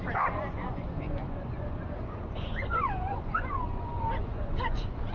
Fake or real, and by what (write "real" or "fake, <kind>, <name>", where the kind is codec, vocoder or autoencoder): fake, vocoder, Vocos